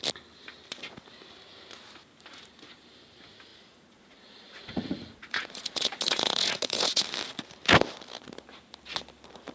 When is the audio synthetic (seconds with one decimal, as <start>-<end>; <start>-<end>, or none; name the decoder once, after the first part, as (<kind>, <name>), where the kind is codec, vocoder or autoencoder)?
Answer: 3.5-7.0 (vocoder, Vocos)

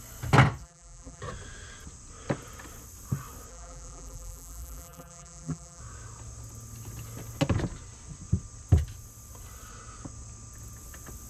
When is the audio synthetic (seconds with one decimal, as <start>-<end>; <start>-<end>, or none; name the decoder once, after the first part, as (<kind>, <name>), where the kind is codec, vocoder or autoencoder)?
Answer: 0.6-1.2 (vocoder, BigVGAN v2); 3.5-5.8